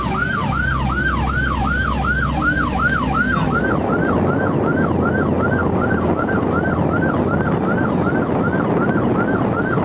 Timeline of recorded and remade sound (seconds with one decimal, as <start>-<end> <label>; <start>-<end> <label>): 0.0-5.6 recorded; 5.6-6.5 remade; 6.5-9.8 recorded

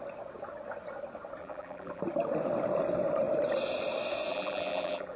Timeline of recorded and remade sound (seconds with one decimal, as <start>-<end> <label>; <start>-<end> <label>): 0.0-1.4 recorded; 1.4-2.0 remade; 2.0-4.3 recorded; 4.3-5.2 remade

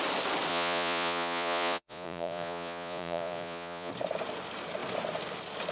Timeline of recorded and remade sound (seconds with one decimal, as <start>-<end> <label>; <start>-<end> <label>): 0.0-0.5 recorded; 0.5-3.9 remade; 3.9-5.7 recorded